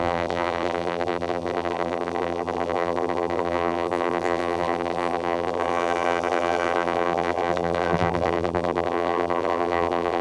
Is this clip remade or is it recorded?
remade